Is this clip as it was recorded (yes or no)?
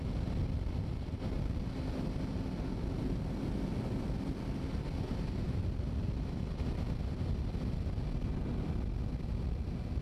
yes